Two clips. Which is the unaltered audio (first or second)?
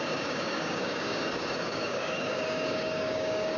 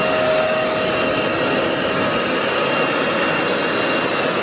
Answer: second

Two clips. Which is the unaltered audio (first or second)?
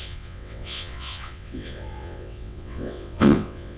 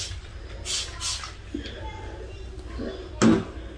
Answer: second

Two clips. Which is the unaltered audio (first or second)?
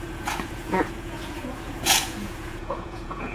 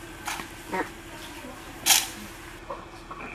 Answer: second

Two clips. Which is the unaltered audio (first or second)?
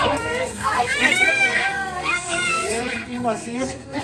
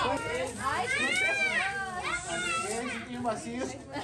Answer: second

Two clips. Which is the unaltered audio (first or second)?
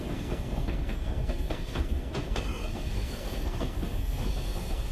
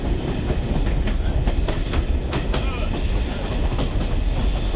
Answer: second